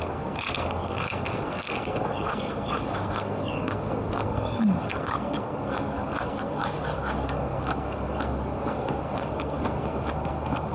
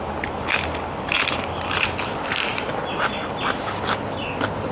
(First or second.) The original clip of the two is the second